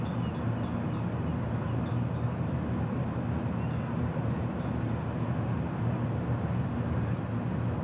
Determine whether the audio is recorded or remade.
recorded